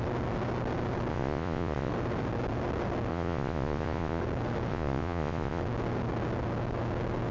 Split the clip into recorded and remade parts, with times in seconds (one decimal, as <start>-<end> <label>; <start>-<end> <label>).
0.0-1.1 recorded; 1.1-1.9 remade; 1.9-3.1 recorded; 3.1-4.2 remade; 4.2-4.7 recorded; 4.7-5.6 remade; 5.6-7.3 recorded